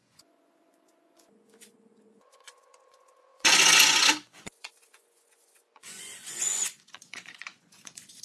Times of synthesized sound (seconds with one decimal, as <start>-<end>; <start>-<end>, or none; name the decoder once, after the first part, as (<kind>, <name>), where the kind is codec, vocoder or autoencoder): 0.0-8.2 (vocoder, Vocos)